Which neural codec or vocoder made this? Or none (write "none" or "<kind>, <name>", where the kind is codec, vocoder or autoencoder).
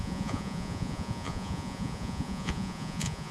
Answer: vocoder, Vocos